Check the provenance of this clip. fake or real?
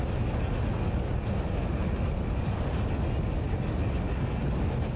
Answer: real